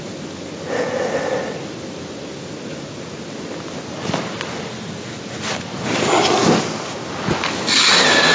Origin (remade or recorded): recorded